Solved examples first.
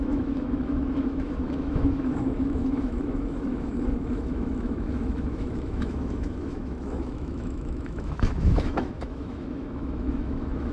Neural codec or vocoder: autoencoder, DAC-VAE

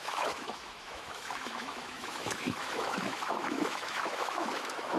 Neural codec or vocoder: autoencoder, DAC-VAE